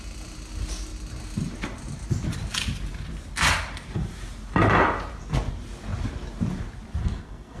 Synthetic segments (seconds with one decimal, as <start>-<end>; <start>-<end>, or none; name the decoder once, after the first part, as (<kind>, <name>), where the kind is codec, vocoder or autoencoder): 7.0-7.6 (codec, SNAC)